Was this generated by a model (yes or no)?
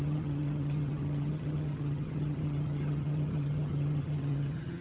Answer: yes